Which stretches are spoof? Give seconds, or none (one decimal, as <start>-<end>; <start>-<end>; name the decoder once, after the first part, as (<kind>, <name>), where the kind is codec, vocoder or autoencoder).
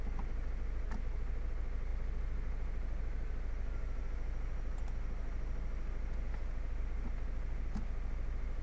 none